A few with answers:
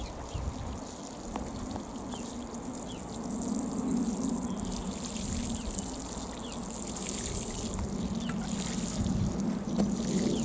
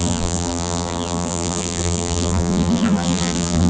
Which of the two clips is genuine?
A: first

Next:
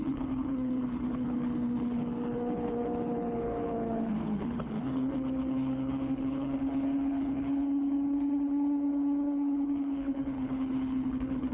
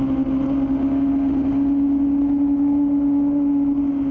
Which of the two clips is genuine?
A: second